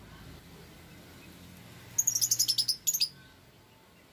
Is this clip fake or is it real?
real